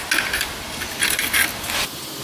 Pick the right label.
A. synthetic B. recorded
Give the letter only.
B